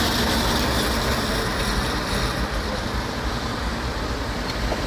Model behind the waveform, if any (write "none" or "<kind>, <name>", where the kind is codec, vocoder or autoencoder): vocoder, BigVGAN v2